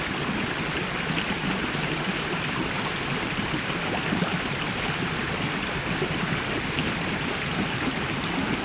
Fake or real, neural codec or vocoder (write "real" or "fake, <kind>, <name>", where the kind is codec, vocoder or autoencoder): real